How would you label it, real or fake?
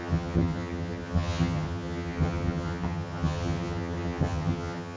fake